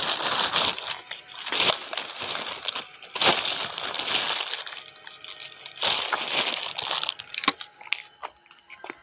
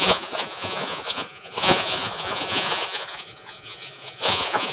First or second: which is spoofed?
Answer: second